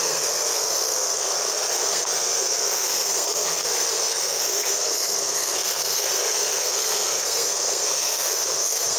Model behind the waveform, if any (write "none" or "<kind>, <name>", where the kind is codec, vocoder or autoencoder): codec, SNAC